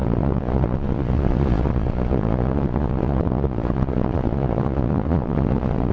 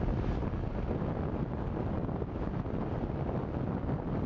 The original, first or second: second